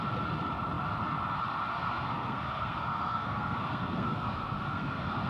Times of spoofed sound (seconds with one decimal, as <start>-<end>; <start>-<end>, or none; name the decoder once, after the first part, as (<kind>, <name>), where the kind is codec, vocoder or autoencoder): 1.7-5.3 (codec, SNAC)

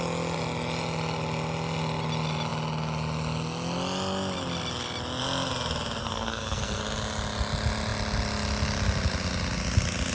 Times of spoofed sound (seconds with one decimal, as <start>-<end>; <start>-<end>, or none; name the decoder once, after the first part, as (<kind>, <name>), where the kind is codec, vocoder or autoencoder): 6.0-6.8 (codec, SNAC)

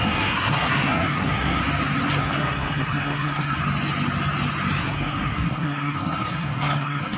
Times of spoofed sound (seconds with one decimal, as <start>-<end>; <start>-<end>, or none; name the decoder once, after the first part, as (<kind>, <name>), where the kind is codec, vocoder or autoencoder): 0.0-1.6 (codec, SNAC); 2.2-3.6; 4.8-7.2

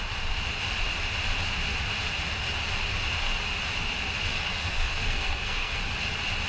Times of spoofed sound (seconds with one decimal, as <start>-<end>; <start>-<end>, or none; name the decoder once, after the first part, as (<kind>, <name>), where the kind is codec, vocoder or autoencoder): 4.3-5.8 (codec, SNAC)

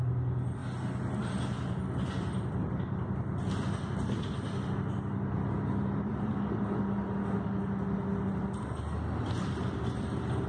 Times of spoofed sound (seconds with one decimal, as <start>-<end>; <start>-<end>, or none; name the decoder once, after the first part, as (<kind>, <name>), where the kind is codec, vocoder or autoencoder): none

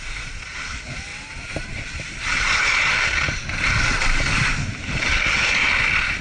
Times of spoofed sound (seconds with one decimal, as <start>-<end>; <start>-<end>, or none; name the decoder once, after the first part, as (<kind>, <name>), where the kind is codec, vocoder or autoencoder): none